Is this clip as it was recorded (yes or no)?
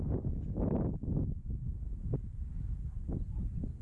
yes